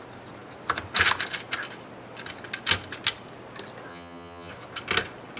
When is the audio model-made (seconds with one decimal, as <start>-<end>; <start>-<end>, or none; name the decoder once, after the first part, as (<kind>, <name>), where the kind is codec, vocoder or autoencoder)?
3.9-4.5 (vocoder, HiFi-GAN)